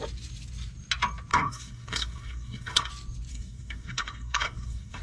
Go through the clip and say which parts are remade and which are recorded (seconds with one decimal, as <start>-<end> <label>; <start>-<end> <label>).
0.0-1.3 recorded; 1.3-2.9 remade; 2.9-3.3 recorded; 3.3-5.0 remade